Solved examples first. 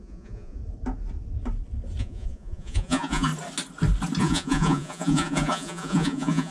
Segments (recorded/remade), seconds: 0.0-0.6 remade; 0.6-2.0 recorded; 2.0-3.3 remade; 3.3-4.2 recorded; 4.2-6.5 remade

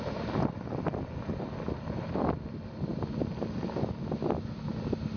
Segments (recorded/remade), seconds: 0.0-5.2 recorded

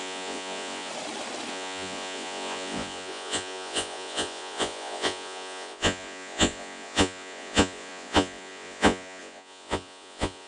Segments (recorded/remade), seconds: 0.0-0.9 remade; 0.9-1.5 recorded; 1.5-10.5 remade

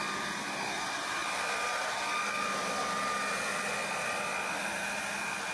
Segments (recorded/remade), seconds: 0.0-5.5 recorded

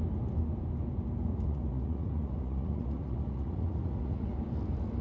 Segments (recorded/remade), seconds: 0.0-1.3 recorded; 1.3-4.3 remade; 4.3-5.0 recorded

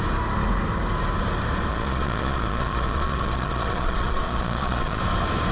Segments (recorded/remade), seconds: 0.0-1.7 recorded; 1.7-5.0 remade; 5.0-5.5 recorded